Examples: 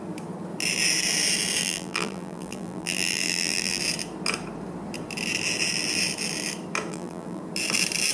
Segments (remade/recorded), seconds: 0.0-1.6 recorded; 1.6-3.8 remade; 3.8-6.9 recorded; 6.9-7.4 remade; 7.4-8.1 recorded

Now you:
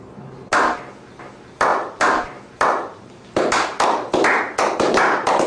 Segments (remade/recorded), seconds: 0.0-1.7 recorded; 1.7-2.5 remade; 2.5-5.5 recorded

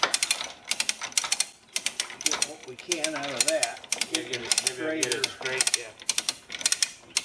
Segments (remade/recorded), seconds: 0.0-7.2 recorded

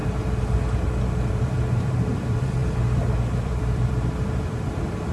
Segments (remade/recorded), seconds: 0.0-1.3 recorded; 1.3-5.1 remade